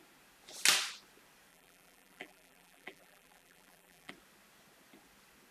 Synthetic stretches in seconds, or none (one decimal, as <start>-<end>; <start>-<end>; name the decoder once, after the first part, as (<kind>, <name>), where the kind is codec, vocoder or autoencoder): 1.5-4.1 (vocoder, BigVGAN v2)